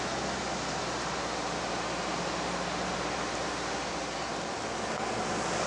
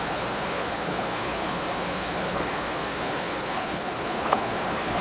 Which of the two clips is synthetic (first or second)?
second